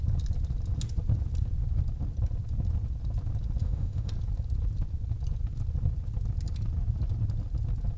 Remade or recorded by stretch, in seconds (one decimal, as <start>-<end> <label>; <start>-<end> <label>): 0.0-3.6 recorded; 3.6-4.1 remade; 4.1-8.0 recorded